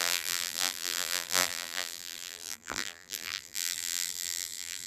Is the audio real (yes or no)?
no